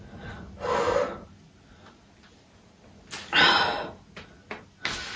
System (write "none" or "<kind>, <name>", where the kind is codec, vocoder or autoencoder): none